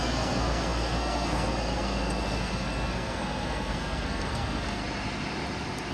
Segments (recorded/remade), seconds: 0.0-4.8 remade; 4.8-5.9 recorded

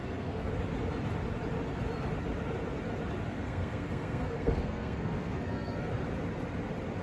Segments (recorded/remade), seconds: 0.0-0.5 remade; 0.5-3.3 recorded; 3.3-5.9 remade; 5.9-7.0 recorded